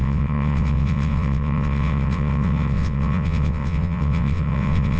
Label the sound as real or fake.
fake